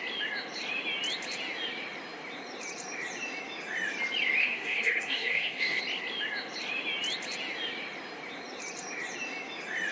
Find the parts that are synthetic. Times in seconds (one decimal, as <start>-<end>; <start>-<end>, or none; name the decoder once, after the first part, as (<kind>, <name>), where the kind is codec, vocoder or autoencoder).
4.4-5.8 (codec, SNAC)